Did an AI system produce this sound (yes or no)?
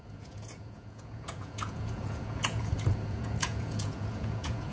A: yes